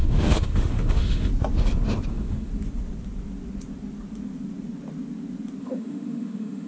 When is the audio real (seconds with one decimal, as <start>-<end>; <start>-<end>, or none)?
1.3-2.1; 2.5-5.6